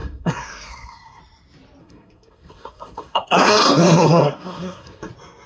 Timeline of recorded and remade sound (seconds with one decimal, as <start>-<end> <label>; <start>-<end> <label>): 0.0-1.2 remade; 1.2-1.8 recorded; 1.8-5.1 remade; 5.1-5.5 recorded